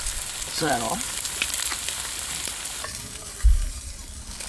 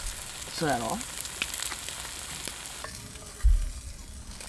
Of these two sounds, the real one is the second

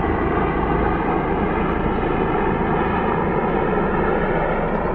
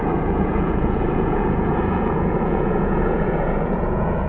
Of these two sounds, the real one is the first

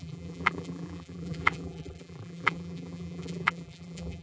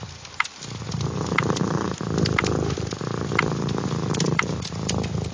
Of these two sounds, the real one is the second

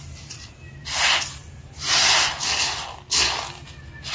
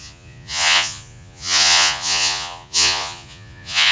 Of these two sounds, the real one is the first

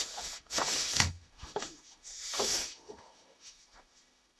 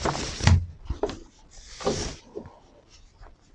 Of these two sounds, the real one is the second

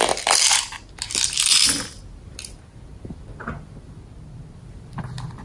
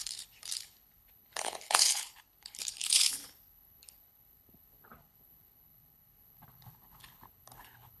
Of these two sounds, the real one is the first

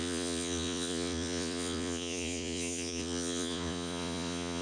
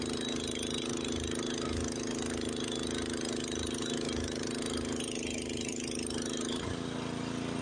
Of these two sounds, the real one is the second